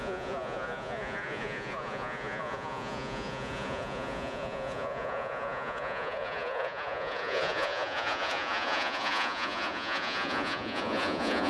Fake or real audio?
fake